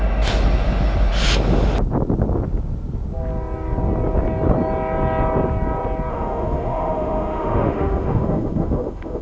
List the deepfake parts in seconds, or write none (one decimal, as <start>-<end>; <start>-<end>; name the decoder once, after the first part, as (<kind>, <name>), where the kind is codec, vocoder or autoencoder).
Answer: 6.1-9.2 (autoencoder, DAC-VAE)